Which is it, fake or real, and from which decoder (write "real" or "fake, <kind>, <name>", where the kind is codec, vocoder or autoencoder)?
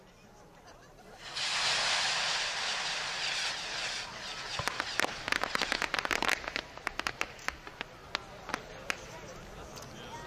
real